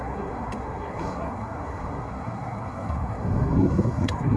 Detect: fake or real fake